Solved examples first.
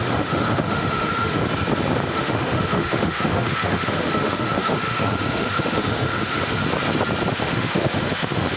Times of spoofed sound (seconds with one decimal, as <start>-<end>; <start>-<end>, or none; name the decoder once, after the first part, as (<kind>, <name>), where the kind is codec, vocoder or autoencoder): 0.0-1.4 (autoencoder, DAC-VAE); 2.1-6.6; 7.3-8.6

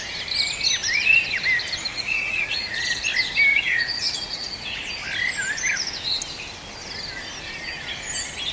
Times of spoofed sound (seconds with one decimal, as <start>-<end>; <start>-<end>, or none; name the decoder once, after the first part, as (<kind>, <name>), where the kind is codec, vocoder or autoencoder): 1.9-3.0 (vocoder, Vocos); 3.5-4.9

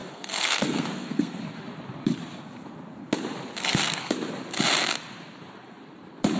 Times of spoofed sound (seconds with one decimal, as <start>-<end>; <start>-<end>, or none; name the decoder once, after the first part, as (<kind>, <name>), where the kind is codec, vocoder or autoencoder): 0.0-1.4 (codec, SNAC); 3.6-4.1